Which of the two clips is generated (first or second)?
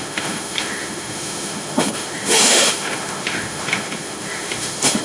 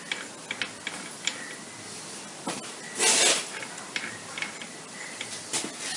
first